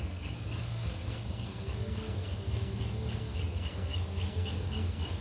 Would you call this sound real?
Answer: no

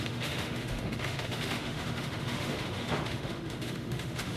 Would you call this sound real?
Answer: no